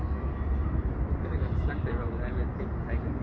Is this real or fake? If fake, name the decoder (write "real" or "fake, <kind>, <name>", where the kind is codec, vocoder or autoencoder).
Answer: fake, vocoder, BigVGAN v2